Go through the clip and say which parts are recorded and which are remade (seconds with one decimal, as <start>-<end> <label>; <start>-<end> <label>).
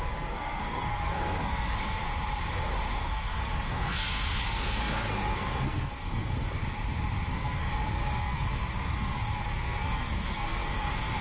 0.0-2.1 remade; 2.1-3.0 recorded; 3.0-6.6 remade; 6.6-7.3 recorded; 7.3-11.2 remade